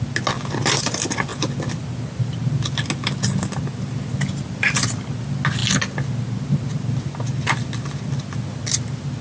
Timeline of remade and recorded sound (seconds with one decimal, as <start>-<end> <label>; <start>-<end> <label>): 0.0-9.2 recorded